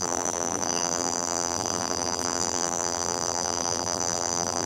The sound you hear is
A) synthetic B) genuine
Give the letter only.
A